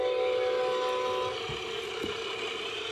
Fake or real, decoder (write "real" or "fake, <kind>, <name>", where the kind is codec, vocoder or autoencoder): real